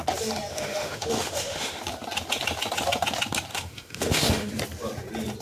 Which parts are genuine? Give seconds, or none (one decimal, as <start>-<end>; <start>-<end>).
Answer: 0.0-0.5; 1.8-3.5; 4.5-5.4